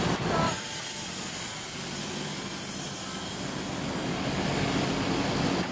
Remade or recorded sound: recorded